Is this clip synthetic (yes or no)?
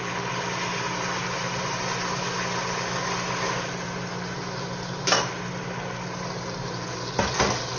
no